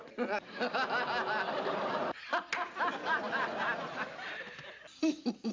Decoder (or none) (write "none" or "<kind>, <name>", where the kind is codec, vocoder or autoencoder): none